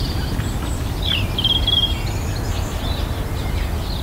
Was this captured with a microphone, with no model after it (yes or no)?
yes